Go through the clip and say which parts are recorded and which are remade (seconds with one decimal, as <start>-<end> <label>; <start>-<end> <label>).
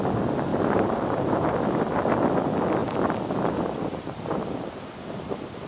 0.0-0.5 recorded; 0.5-2.0 remade; 2.0-5.7 recorded